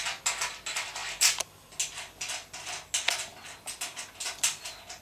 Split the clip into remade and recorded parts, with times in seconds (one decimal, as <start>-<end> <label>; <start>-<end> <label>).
0.0-1.0 recorded; 1.0-1.7 remade; 1.7-3.3 recorded; 3.3-5.0 remade